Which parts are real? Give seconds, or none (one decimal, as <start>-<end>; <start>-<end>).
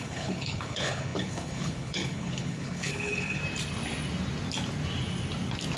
3.4-5.8